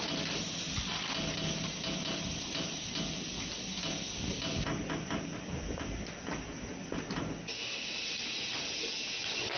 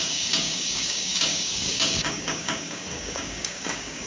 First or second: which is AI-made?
second